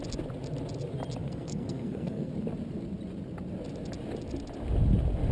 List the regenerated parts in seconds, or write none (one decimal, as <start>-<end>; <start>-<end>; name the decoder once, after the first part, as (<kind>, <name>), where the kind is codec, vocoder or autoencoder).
1.2-2.3 (codec, SNAC)